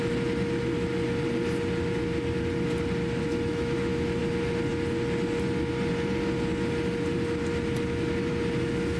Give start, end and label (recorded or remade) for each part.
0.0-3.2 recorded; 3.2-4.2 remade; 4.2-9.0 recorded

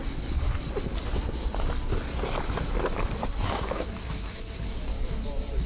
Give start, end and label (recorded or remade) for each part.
0.0-3.4 recorded; 3.4-4.9 remade; 4.9-5.7 recorded

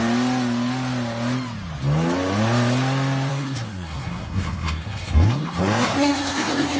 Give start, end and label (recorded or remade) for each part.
0.0-3.3 recorded; 3.3-6.8 remade

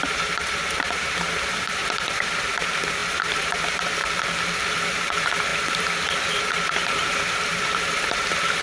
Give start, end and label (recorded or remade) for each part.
0.0-4.0 remade; 4.0-4.6 recorded; 4.6-8.6 remade

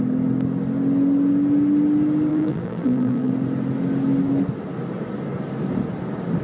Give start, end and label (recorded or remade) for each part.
0.0-2.3 recorded; 2.3-3.3 remade; 3.3-6.4 recorded

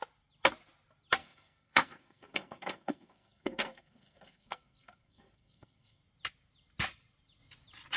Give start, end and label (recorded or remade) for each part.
0.0-1.2 recorded; 1.2-6.0 remade; 6.0-8.0 recorded